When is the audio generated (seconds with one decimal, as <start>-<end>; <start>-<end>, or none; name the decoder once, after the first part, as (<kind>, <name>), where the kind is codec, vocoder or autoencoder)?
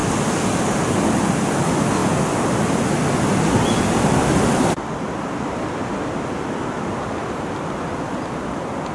none